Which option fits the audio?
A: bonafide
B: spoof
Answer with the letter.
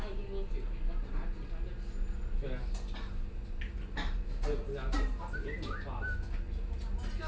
A